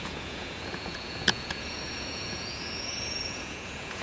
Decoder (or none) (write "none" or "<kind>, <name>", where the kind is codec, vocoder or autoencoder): vocoder, Vocos